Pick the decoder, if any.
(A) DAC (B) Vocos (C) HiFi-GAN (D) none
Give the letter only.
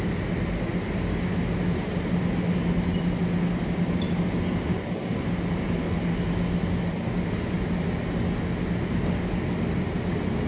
D